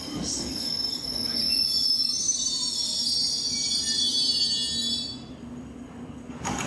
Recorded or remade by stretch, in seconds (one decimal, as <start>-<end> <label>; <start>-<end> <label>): 0.0-1.3 remade; 1.3-5.3 recorded; 5.3-6.7 remade